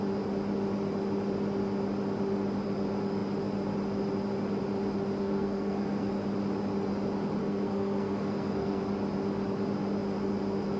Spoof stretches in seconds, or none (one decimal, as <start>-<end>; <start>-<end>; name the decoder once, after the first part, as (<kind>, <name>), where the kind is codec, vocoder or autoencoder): 5.2-6.1 (codec, SNAC); 7.4-8.8